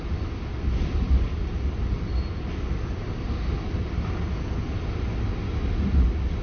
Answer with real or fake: real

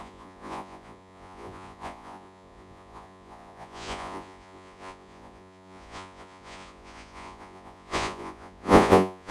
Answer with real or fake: fake